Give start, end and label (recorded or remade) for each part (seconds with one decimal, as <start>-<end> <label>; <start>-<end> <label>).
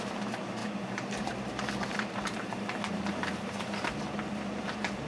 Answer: 0.0-0.6 recorded; 0.6-3.0 remade; 3.0-5.1 recorded